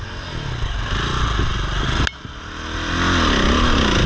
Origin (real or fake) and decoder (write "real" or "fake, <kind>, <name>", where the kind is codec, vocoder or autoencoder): real